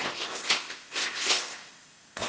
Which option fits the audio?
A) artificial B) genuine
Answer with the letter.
A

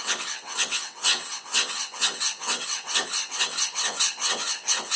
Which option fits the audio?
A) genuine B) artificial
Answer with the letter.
B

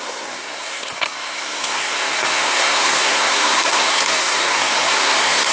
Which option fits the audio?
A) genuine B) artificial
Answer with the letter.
B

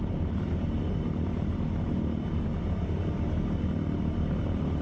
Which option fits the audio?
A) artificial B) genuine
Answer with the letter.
A